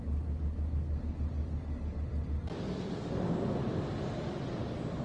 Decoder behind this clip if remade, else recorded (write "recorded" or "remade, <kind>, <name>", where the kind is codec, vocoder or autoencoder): recorded